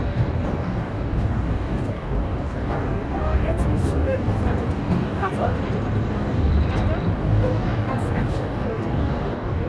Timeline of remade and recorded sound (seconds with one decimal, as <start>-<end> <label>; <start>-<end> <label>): 0.0-5.6 remade; 5.6-6.1 recorded; 6.1-6.5 remade; 6.5-7.2 recorded; 7.2-9.7 remade